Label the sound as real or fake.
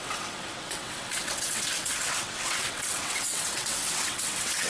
fake